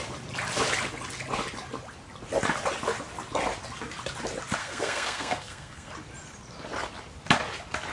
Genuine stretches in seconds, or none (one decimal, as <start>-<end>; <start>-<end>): 0.0-4.6; 5.9-7.9